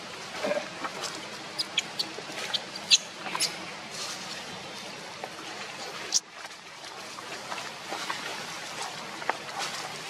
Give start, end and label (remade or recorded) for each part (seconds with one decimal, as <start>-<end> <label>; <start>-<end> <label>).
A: 0.0-2.0 recorded; 2.0-2.8 remade; 2.8-3.9 recorded; 3.9-7.8 remade; 7.8-8.3 recorded; 8.3-9.6 remade; 9.6-10.1 recorded